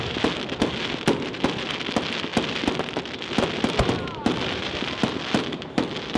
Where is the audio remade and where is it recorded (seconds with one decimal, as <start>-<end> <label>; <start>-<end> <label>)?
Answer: 0.0-6.2 recorded